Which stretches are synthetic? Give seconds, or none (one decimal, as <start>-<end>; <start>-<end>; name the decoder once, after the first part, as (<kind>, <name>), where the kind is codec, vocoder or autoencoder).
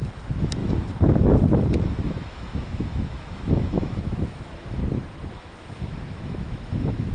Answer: 0.0-4.8 (autoencoder, DAC-VAE); 5.3-7.1